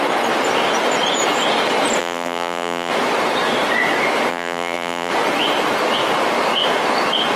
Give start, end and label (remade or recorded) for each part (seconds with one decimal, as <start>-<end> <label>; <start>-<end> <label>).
0.0-2.0 recorded; 2.0-2.9 remade; 2.9-4.3 recorded; 4.3-5.1 remade; 5.1-7.4 recorded